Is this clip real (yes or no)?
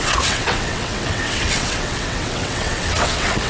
no